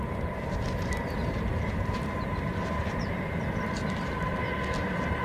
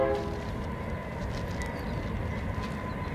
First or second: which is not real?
first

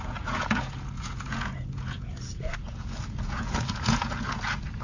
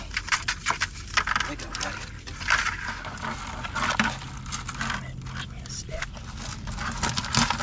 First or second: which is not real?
first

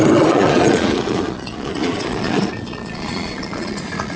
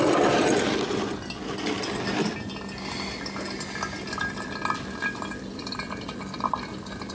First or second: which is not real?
first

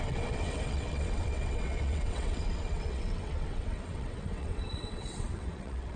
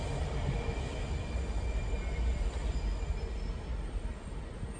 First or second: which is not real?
first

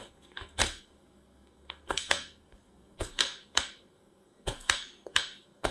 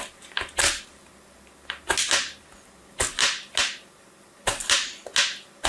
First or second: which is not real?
first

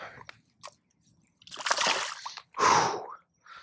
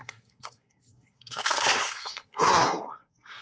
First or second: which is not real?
second